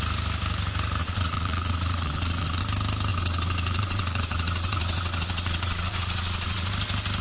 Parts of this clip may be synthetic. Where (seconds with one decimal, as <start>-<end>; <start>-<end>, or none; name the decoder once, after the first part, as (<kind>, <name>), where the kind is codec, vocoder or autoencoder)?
1.0-2.6 (vocoder, Vocos); 3.1-6.7